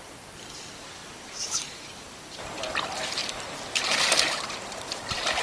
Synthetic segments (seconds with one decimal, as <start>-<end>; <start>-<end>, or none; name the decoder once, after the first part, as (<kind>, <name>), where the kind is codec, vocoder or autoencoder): 0.0-5.4 (vocoder, BigVGAN v2)